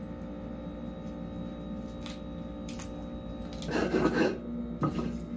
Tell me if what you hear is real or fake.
real